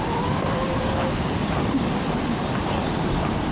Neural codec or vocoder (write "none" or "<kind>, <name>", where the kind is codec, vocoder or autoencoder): none